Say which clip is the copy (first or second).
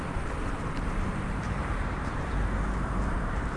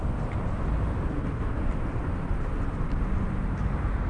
first